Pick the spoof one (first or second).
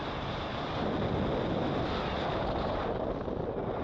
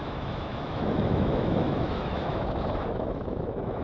second